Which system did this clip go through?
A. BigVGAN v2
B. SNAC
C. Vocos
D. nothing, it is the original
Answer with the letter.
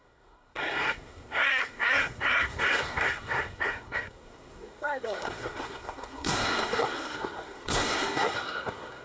B